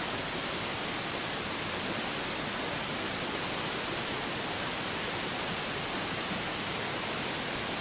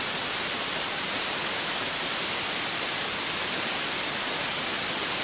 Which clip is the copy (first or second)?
second